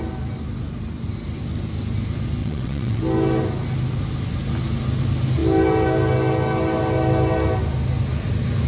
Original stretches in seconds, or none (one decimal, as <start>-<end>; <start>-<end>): 0.0-2.4; 3.0-8.7

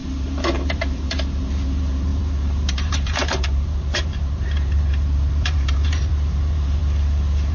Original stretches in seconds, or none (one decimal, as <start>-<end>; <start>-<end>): 6.8-7.5

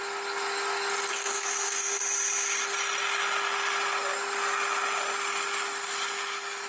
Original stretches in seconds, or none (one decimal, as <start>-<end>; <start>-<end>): 0.0-1.1; 2.0-6.7

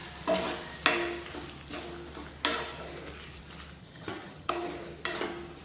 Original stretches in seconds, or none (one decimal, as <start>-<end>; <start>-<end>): 0.0-3.8; 4.5-5.6

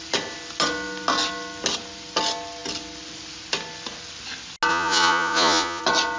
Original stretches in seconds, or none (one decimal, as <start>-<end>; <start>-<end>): 0.0-4.7; 5.8-6.2

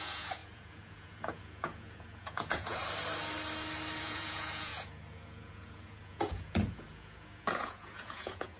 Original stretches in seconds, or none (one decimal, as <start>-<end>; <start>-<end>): 2.8-4.0

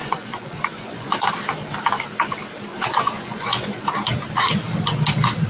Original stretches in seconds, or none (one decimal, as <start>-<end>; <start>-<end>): 1.3-2.7; 3.8-5.5

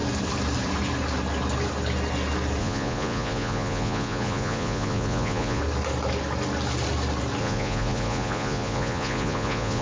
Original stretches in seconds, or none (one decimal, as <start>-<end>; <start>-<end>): 0.0-2.6; 5.6-7.4